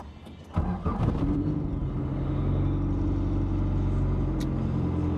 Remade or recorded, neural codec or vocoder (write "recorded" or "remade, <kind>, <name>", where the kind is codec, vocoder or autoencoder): recorded